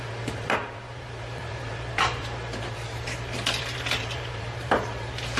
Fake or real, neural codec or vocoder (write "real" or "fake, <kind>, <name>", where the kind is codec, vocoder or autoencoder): fake, vocoder, BigVGAN v2